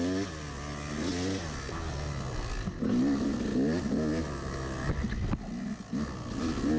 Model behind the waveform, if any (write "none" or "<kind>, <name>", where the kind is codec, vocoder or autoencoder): none